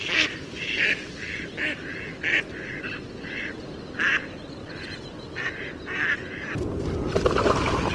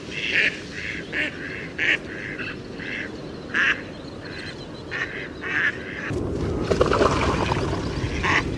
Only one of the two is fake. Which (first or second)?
first